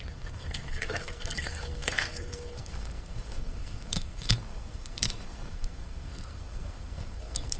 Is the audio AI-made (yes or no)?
yes